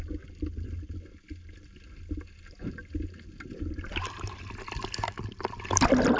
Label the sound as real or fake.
real